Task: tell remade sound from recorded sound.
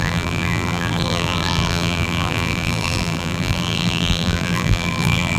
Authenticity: remade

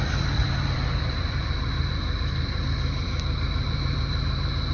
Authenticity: remade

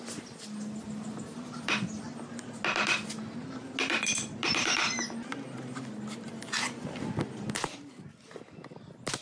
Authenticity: recorded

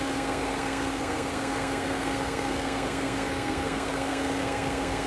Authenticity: remade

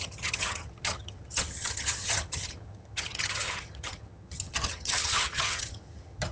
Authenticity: remade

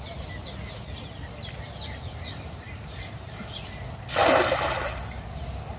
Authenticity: recorded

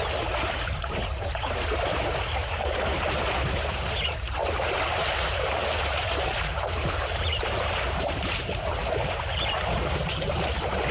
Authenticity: remade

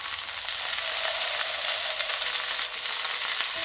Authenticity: recorded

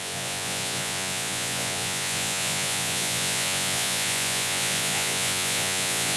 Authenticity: remade